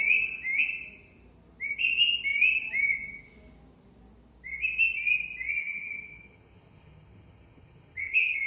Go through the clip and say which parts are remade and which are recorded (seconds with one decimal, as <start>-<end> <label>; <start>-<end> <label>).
0.0-5.6 recorded; 5.6-8.5 remade